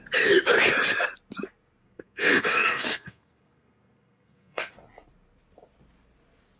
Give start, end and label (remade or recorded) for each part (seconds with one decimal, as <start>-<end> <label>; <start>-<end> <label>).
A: 0.0-1.8 recorded; 1.8-4.7 remade; 4.7-6.6 recorded